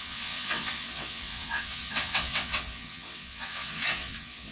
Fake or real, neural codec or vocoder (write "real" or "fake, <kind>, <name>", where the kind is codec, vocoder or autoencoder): fake, vocoder, WaveNeXt